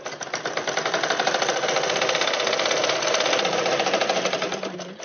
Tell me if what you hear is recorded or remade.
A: recorded